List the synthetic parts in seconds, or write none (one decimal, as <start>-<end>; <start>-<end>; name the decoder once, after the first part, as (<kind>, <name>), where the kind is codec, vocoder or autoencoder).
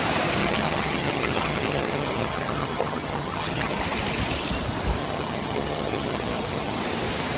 0.4-3.8 (vocoder, HiFi-GAN); 5.0-6.8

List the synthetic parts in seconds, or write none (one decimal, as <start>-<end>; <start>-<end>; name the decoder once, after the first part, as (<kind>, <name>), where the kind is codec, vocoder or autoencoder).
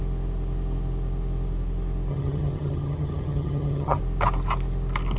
2.1-4.0 (vocoder, HiFi-GAN)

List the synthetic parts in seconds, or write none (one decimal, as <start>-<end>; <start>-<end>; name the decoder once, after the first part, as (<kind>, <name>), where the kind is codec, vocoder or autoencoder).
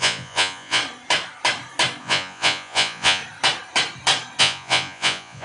0.0-0.8 (vocoder, Vocos); 2.0-3.2; 4.4-5.4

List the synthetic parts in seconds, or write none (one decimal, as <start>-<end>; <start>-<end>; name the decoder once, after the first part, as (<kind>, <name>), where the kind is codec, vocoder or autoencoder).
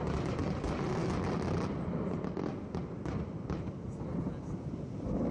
none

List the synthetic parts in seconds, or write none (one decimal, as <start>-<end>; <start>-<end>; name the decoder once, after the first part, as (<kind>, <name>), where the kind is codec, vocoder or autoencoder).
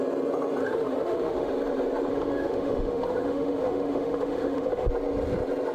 0.6-1.5 (autoencoder, DAC-VAE); 2.1-4.9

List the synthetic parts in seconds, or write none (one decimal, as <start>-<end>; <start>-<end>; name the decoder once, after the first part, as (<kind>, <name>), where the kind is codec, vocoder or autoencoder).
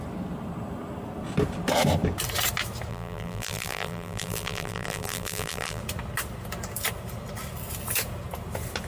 2.9-5.8 (vocoder, BigVGAN v2)